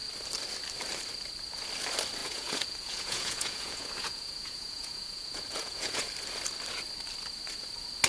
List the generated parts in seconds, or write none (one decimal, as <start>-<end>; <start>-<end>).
2.2-6.1